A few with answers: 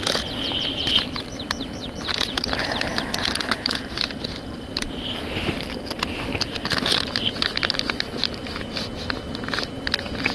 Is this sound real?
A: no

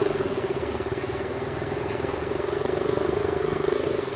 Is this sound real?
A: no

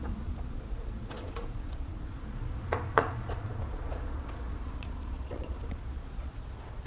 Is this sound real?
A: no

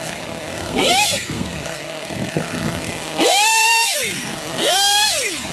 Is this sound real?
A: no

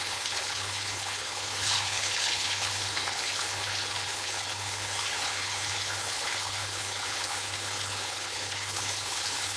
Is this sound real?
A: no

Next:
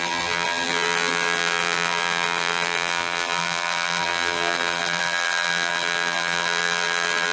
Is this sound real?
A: no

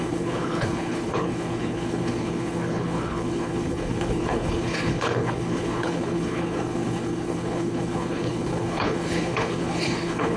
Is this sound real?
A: no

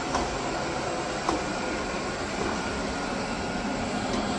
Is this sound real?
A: yes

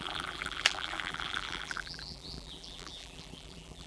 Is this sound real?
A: no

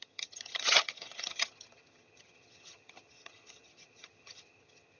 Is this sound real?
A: no